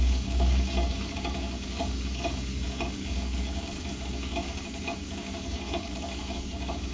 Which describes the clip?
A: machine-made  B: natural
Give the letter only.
A